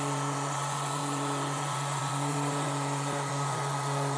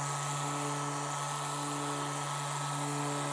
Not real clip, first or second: first